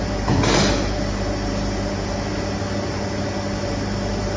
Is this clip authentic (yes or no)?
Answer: yes